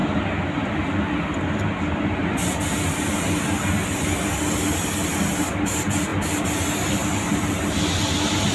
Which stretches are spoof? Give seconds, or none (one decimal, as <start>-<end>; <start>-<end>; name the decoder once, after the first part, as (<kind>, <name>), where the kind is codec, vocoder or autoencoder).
none